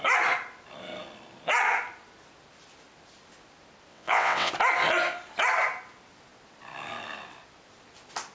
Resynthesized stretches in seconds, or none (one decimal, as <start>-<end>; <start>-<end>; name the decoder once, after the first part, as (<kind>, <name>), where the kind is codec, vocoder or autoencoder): 3.9-4.5 (vocoder, WaveNeXt)